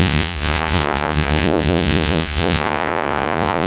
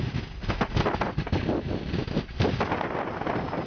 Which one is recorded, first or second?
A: second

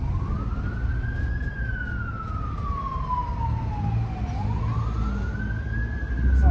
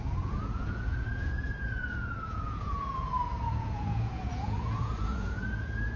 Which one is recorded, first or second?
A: first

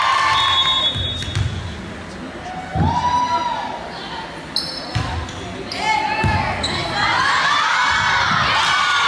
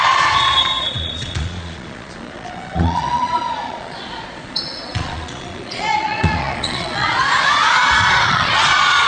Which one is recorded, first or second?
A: first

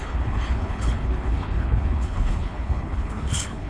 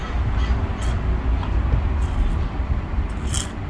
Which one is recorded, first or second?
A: second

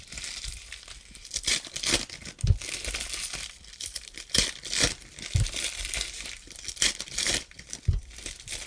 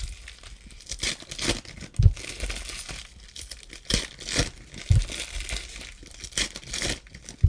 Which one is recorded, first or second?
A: second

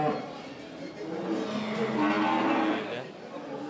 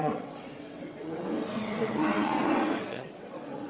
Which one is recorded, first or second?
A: first